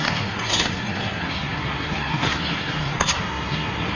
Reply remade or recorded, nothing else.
remade